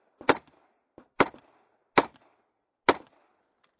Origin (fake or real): real